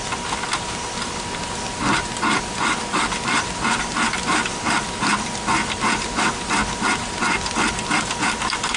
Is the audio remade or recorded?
recorded